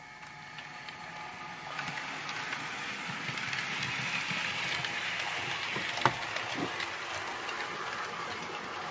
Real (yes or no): yes